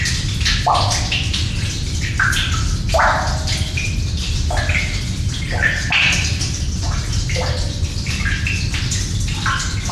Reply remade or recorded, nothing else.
recorded